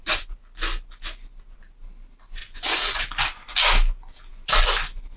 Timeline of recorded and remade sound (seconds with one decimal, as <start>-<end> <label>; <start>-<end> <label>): 0.0-2.4 recorded; 2.4-3.0 remade; 3.0-5.2 recorded